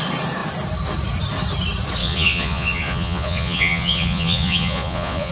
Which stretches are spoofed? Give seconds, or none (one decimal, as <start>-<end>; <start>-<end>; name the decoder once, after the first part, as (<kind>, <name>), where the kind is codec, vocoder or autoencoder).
2.0-5.3 (vocoder, Vocos)

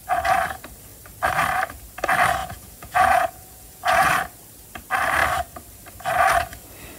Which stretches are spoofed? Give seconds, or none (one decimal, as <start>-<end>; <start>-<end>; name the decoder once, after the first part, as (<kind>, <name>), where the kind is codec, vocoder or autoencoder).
2.4-4.1 (vocoder, Vocos)

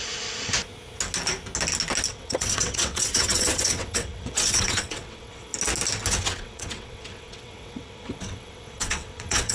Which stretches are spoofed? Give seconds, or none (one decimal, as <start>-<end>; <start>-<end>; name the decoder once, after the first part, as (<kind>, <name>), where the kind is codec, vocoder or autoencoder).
2.1-5.5 (vocoder, WaveNeXt); 6.1-9.5

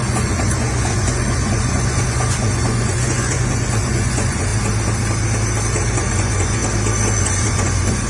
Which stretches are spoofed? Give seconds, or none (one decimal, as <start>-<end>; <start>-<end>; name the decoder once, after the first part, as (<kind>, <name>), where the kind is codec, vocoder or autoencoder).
0.0-4.5 (vocoder, Vocos); 5.7-6.6; 7.2-8.1

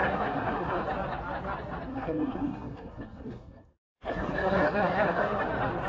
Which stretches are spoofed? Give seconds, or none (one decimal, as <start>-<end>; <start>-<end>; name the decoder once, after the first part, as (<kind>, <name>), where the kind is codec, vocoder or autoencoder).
0.0-0.8 (codec, SNAC); 1.9-5.4

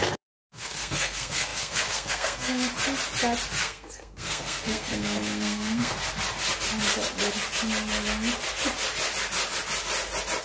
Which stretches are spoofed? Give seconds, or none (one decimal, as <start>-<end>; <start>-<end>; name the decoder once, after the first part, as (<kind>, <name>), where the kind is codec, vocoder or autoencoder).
0.0-2.7 (codec, SNAC); 3.6-5.9

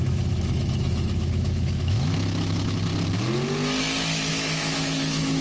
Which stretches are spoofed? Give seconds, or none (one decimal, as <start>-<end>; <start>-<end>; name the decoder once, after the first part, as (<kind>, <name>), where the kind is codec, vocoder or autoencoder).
0.0-2.9 (autoencoder, DAC-VAE); 4.3-5.4